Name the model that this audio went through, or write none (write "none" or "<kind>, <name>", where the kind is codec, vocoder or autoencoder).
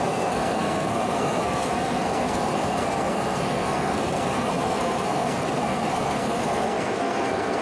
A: codec, SNAC